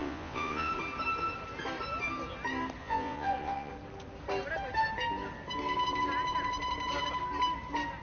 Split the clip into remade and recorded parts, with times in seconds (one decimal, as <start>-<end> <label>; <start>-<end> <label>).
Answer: 0.0-0.7 remade; 0.7-2.8 recorded; 2.8-3.7 remade; 3.7-8.0 recorded